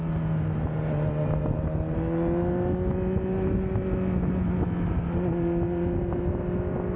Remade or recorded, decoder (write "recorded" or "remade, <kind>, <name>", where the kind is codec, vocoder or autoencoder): recorded